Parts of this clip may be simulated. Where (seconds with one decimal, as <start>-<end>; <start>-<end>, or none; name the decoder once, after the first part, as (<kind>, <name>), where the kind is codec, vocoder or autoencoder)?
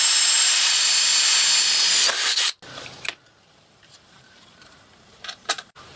0.0-1.1 (vocoder, BigVGAN v2); 3.5-6.0